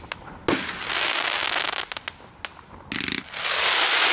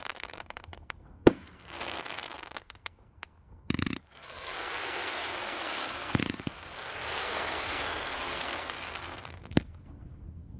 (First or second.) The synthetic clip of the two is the second